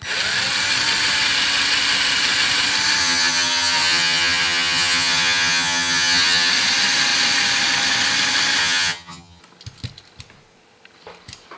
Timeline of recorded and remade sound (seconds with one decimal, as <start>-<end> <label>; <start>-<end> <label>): 0.0-3.0 recorded; 3.0-6.5 remade; 6.5-8.6 recorded; 8.6-9.4 remade; 9.4-11.6 recorded